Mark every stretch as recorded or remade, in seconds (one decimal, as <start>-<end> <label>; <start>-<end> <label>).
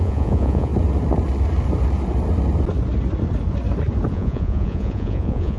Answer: 0.0-0.7 remade; 0.7-4.1 recorded; 4.1-5.6 remade